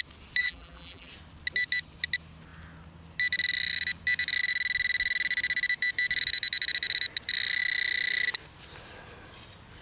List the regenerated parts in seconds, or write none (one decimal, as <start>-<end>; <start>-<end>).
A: 0.4-1.1